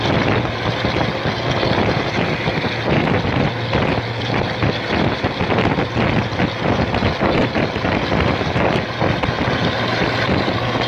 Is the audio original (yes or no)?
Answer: yes